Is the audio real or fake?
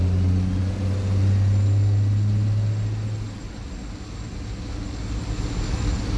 real